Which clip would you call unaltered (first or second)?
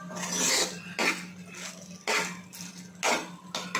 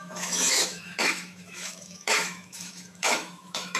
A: first